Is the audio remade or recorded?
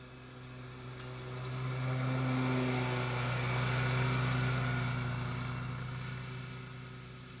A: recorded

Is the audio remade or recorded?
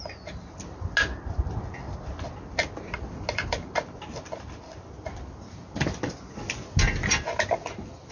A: recorded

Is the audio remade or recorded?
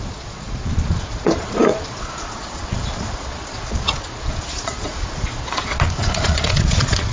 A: remade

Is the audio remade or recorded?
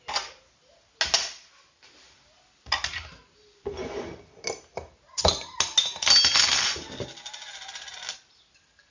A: recorded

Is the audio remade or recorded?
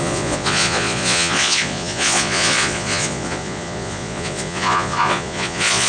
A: remade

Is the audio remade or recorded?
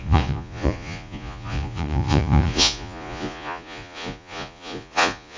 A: remade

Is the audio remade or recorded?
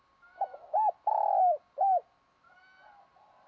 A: recorded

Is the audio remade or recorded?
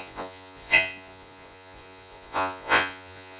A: remade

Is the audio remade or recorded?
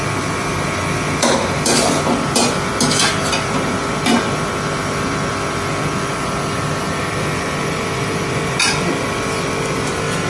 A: recorded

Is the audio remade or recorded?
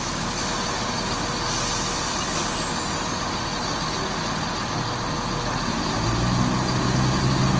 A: recorded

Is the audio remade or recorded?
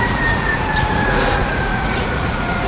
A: remade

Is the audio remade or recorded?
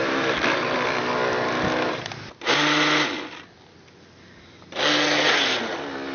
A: recorded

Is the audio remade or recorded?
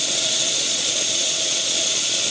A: remade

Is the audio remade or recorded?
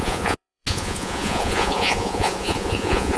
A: remade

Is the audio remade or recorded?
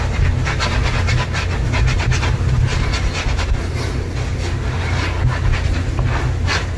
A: recorded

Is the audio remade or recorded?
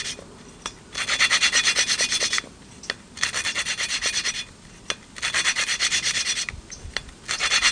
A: recorded